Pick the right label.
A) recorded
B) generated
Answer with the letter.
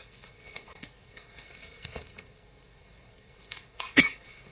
B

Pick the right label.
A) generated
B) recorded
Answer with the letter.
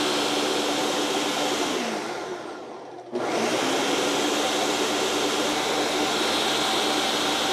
B